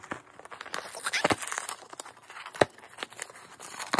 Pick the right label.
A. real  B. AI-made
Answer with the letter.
A